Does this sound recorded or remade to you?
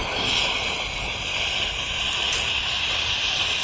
recorded